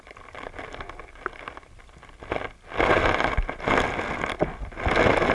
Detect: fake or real real